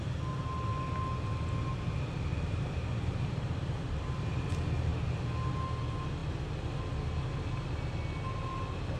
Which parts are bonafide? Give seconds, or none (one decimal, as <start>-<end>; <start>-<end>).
0.0-2.3; 3.8-9.0